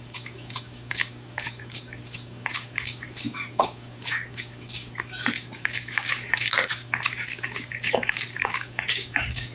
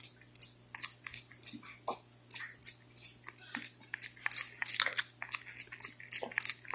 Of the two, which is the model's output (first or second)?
first